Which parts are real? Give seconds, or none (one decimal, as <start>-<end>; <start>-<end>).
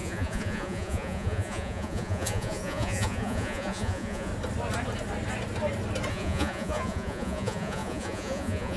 4.3-6.1